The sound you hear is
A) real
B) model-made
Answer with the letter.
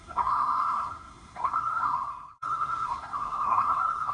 B